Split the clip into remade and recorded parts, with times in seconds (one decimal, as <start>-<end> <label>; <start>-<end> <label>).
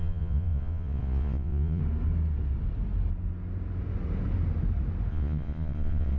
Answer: 0.0-1.8 remade; 1.8-5.1 recorded; 5.1-6.2 remade